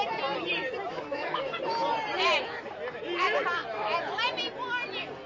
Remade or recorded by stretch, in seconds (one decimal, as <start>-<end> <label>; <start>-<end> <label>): 0.0-0.9 recorded; 0.9-1.6 remade; 1.6-5.3 recorded